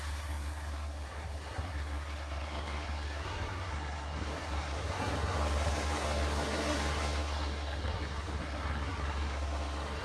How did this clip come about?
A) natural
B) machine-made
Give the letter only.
B